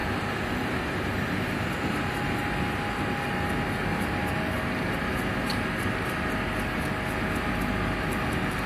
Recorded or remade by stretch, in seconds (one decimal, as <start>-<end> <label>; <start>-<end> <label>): 0.0-1.0 remade; 1.0-8.7 recorded